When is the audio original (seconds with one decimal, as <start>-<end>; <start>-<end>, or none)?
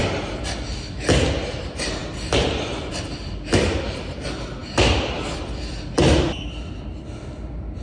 0.0-7.8